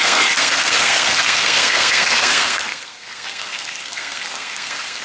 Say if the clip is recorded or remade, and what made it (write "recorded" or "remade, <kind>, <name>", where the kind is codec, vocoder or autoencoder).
remade, codec, SNAC